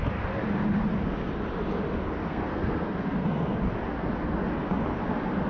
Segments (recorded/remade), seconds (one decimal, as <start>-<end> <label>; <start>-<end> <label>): 0.0-2.3 recorded; 2.3-3.6 remade; 3.6-5.5 recorded